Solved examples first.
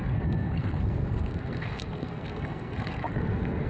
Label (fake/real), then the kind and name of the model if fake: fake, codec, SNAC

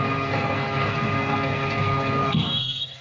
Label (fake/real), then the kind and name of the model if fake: fake, codec, SNAC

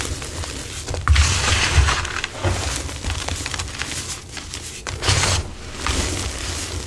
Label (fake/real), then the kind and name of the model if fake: real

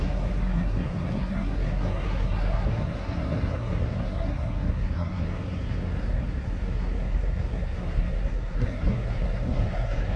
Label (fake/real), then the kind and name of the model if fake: fake, codec, SNAC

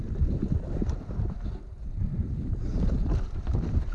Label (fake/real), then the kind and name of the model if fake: real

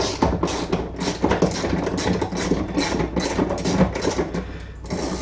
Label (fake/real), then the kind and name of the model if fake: real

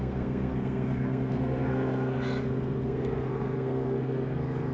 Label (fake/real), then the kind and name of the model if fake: fake, codec, SNAC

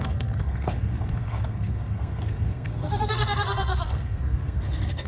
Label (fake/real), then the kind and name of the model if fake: fake, codec, SNAC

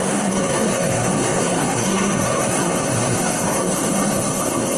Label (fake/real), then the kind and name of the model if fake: fake, codec, SNAC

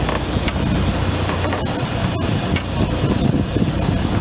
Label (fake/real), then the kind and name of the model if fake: real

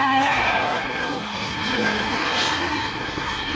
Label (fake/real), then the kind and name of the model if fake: fake, codec, SNAC